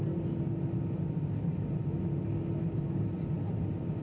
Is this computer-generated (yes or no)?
no